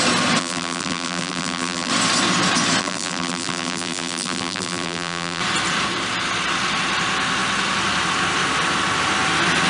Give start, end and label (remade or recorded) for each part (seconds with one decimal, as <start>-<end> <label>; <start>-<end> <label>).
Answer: 0.0-0.4 recorded; 0.4-1.9 remade; 1.9-2.8 recorded; 2.8-5.4 remade; 5.4-9.7 recorded